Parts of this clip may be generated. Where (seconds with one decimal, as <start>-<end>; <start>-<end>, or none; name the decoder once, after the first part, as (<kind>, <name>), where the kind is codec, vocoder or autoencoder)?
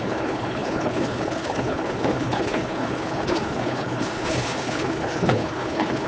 0.0-6.1 (codec, HILCodec)